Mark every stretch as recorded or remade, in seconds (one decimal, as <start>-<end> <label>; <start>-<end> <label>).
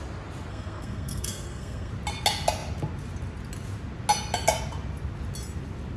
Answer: 0.0-0.5 recorded; 0.5-1.9 remade; 1.9-6.0 recorded